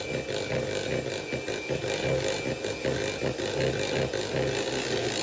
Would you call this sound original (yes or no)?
yes